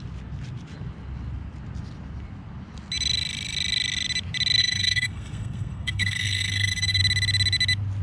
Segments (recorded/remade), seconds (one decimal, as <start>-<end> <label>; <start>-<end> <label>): 0.0-4.6 recorded; 4.6-7.0 remade; 7.0-8.0 recorded